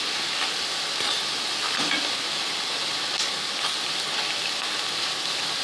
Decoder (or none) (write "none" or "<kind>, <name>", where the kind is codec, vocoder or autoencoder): none